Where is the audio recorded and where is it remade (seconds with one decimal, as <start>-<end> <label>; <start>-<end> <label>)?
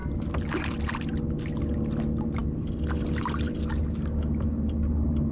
0.0-5.3 recorded